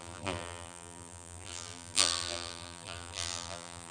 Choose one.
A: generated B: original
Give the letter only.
A